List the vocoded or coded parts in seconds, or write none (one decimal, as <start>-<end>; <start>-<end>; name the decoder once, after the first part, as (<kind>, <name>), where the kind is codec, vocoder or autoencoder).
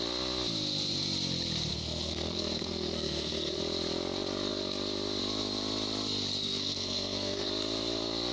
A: 1.7-3.6 (codec, SNAC); 6.4-7.5